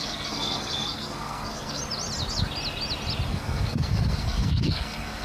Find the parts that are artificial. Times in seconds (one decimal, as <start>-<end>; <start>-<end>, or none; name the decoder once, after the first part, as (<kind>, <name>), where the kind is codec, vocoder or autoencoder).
0.0-1.8 (codec, SNAC); 3.3-5.2